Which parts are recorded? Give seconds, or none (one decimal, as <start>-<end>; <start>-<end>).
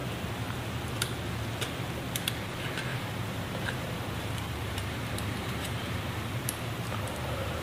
0.0-2.9